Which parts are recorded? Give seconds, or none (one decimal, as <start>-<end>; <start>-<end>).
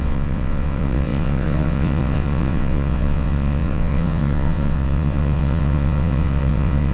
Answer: none